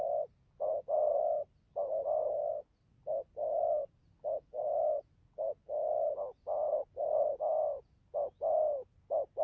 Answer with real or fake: real